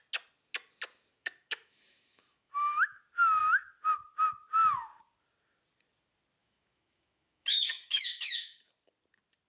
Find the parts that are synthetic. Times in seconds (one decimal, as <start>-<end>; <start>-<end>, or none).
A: 1.1-3.0; 6.4-8.7